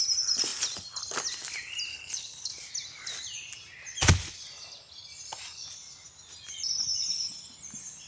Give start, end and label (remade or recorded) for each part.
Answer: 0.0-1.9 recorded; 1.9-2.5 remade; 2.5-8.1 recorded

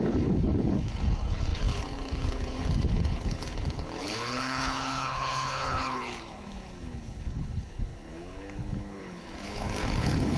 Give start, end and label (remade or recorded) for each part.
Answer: 0.0-10.4 remade

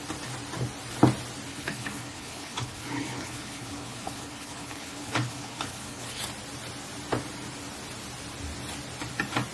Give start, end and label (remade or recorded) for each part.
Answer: 0.0-1.5 recorded; 1.5-6.2 remade; 6.2-9.5 recorded